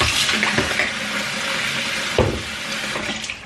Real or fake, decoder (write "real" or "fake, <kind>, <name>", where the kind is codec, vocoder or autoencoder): real